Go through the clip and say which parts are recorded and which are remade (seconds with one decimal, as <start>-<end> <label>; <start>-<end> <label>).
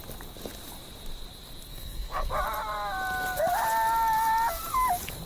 0.0-1.7 recorded; 1.7-2.3 remade; 2.3-5.3 recorded